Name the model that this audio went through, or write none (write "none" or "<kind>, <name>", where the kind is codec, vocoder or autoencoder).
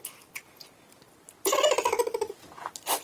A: none